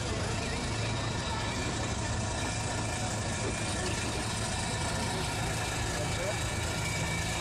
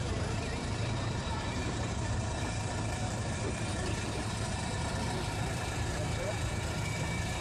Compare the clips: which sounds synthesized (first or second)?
second